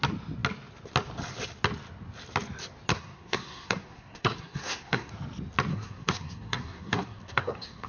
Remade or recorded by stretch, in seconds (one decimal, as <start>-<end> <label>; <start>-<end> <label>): 0.0-2.9 recorded; 2.9-5.1 remade; 5.1-5.7 recorded; 5.7-7.9 remade